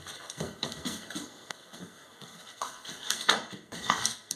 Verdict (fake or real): fake